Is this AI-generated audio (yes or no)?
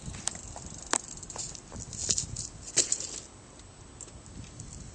no